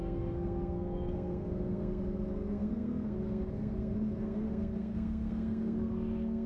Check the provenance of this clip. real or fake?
fake